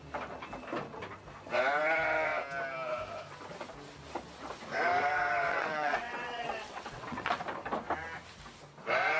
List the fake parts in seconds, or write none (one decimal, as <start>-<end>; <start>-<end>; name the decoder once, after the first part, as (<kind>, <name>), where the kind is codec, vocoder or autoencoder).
5.5-7.4 (vocoder, WaveNeXt)